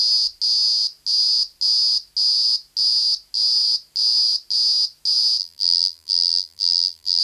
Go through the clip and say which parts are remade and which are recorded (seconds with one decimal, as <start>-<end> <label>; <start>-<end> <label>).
0.0-5.4 recorded; 5.4-7.2 remade